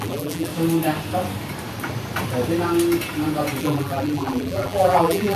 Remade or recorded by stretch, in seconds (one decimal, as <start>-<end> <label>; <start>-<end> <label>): 0.0-0.5 remade; 0.5-3.6 recorded; 3.6-5.4 remade

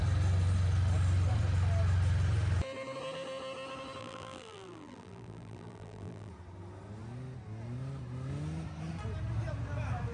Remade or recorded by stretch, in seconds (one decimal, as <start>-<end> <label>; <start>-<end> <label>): 0.0-4.0 recorded; 4.0-6.3 remade; 6.3-10.1 recorded

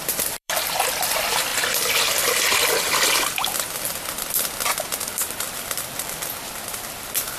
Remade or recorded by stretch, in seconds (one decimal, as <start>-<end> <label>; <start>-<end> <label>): 0.0-1.5 remade; 1.5-5.0 recorded; 5.0-7.4 remade

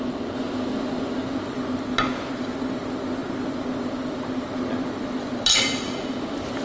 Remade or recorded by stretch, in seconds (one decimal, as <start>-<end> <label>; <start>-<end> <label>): 0.0-6.6 recorded

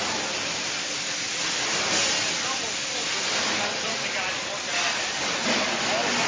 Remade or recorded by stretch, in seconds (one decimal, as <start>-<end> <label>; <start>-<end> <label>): 0.0-6.3 recorded

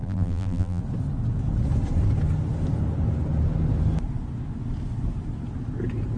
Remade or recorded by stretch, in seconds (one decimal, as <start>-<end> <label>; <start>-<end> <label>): 0.0-0.8 remade; 0.8-6.2 recorded

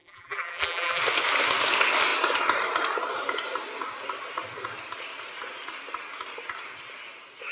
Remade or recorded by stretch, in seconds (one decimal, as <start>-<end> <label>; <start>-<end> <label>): 0.0-1.0 remade; 1.0-7.5 recorded